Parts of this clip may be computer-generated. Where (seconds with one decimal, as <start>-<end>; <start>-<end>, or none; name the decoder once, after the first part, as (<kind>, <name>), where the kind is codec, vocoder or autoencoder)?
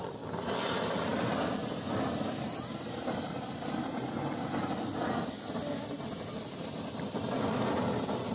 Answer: none